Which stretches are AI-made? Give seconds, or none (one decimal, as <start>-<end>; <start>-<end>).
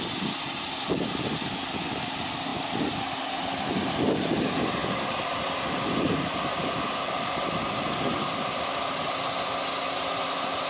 4.8-7.0